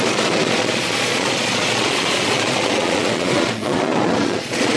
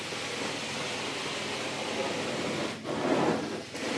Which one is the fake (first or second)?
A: first